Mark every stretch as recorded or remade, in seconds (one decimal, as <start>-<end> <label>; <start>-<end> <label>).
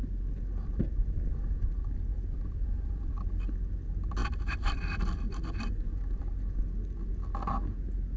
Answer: 0.0-2.1 recorded; 2.1-3.1 remade; 3.1-4.2 recorded; 4.2-6.2 remade; 6.2-8.2 recorded